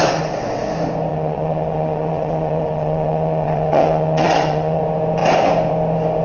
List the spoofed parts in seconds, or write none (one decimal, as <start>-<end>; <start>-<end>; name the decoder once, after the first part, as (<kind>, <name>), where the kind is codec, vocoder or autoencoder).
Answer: 0.0-0.6 (vocoder, WaveNeXt); 1.1-4.8